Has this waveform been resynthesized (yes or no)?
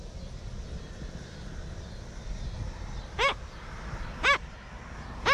no